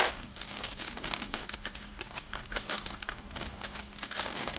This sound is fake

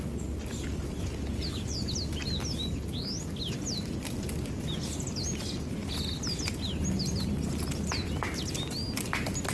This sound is real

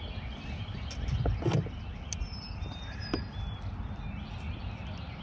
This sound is real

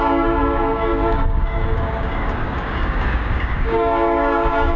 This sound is fake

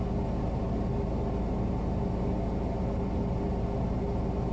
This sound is real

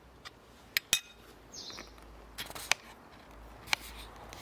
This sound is real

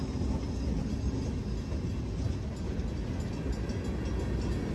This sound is real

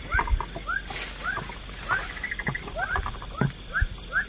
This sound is real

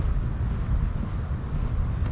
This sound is real